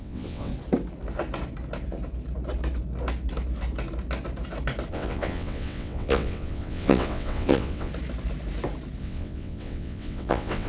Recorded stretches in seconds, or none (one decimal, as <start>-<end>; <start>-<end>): 0.5-4.9; 7.9-9.0